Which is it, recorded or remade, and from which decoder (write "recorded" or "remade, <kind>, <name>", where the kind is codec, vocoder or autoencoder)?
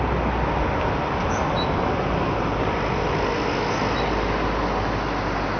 recorded